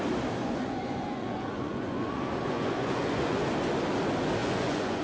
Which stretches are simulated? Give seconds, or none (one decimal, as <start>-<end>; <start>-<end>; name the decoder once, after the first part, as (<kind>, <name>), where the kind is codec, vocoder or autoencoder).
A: 0.4-3.4 (vocoder, Vocos); 4.4-5.0